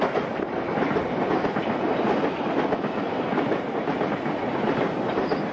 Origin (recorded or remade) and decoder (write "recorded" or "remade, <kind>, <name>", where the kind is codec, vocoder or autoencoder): recorded